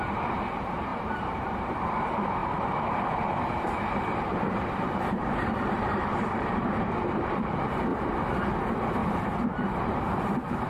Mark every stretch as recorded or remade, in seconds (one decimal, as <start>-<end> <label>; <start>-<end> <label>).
0.0-7.9 remade; 7.9-8.6 recorded; 8.6-10.7 remade